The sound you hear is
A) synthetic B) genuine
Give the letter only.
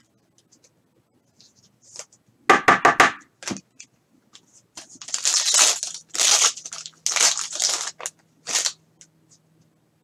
B